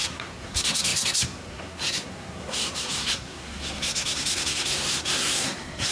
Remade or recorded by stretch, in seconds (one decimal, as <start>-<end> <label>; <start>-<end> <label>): 0.0-5.9 remade